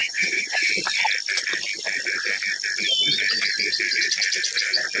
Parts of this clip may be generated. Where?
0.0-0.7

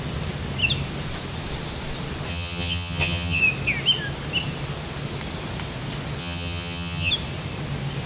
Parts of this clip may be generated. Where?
2.3-3.4; 6.2-7.1

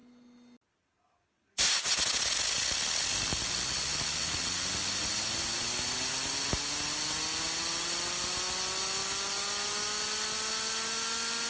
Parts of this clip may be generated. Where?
none

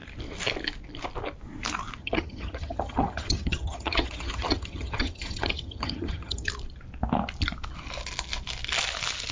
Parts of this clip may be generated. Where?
2.0-6.5

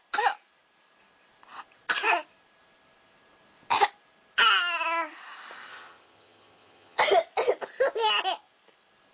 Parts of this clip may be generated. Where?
5.7-7.0

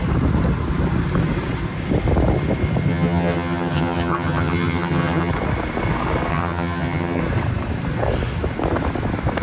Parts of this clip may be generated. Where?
2.9-5.3; 6.3-7.2

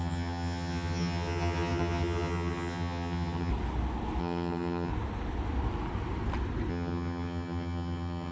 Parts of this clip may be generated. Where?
0.0-3.5; 4.2-4.9; 6.7-8.3

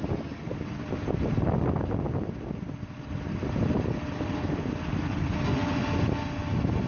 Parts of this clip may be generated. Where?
none